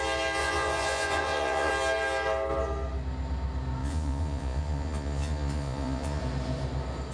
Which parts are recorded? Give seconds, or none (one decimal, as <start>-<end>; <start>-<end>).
0.0-0.4; 1.7-3.8; 6.2-7.1